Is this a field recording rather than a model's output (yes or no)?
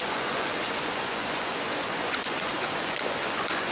no